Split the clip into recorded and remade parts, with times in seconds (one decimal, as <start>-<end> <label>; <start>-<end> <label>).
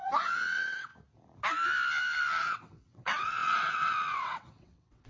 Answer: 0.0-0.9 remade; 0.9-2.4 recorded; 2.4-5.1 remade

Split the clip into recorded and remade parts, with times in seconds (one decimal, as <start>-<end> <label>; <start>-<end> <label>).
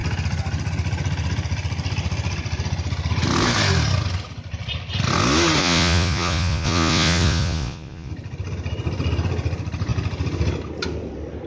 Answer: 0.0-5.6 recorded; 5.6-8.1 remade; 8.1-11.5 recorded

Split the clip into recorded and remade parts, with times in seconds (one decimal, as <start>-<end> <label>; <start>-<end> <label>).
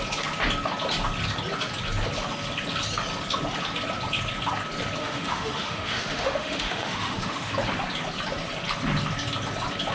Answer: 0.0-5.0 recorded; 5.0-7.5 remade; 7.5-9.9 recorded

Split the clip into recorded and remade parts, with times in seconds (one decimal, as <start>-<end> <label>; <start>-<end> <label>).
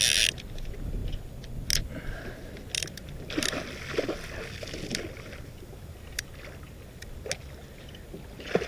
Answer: 0.0-8.7 recorded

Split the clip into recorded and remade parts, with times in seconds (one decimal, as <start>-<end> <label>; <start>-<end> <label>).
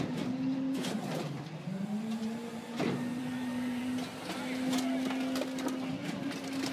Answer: 0.0-0.7 recorded; 0.7-3.8 remade; 3.8-6.7 recorded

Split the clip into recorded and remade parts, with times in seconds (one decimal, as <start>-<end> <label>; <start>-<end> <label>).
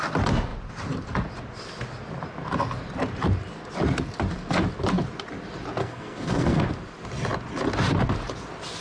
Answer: 0.0-5.8 recorded; 5.8-6.6 remade; 6.6-8.8 recorded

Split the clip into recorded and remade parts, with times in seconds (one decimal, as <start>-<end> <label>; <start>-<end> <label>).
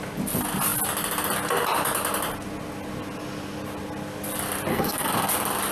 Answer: 0.0-4.7 recorded; 4.7-5.3 remade; 5.3-5.7 recorded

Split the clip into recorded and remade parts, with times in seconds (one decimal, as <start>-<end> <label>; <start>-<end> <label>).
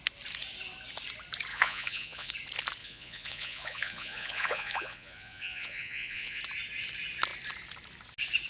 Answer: 0.0-1.5 recorded; 1.5-2.3 remade; 2.3-2.8 recorded; 2.8-6.4 remade; 6.4-8.5 recorded